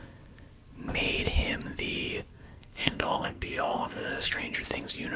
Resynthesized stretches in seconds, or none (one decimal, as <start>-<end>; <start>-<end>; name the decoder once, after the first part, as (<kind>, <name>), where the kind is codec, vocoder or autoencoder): 2.3-4.4 (codec, SNAC)